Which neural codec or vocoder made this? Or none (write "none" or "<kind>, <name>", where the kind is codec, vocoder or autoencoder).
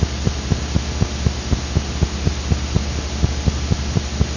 none